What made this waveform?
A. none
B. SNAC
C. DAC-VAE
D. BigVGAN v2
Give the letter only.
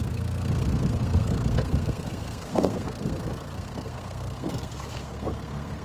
B